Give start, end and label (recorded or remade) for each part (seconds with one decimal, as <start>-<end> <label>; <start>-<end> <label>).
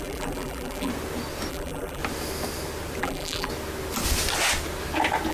0.0-0.9 remade; 0.9-1.5 recorded; 1.5-2.0 remade; 2.0-3.0 recorded; 3.0-3.5 remade; 3.5-5.3 recorded